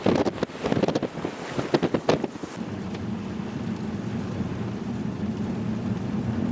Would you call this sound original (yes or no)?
yes